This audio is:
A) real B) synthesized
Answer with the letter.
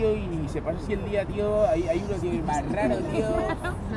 A